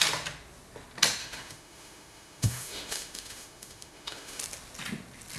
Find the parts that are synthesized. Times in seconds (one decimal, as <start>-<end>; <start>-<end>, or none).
1.2-4.4